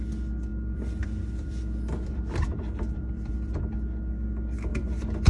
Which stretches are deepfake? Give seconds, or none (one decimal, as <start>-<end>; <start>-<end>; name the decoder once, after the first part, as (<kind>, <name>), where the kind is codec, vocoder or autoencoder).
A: 0.5-3.7 (vocoder, BigVGAN v2); 4.7-5.3